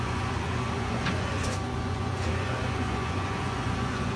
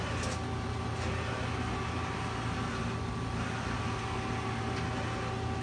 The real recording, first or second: second